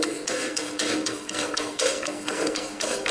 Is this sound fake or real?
fake